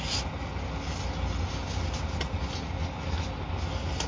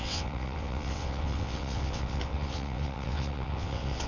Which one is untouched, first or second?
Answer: first